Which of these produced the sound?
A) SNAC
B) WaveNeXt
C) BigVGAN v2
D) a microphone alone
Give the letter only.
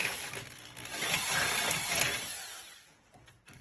C